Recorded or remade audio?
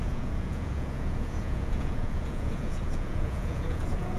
remade